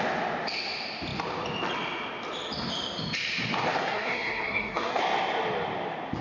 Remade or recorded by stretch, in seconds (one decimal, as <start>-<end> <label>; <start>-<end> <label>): 0.0-3.8 recorded; 3.8-5.0 remade; 5.0-6.2 recorded